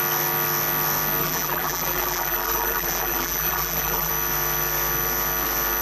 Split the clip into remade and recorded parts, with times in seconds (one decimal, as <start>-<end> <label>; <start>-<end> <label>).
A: 0.0-1.2 recorded; 1.2-4.1 remade; 4.1-5.8 recorded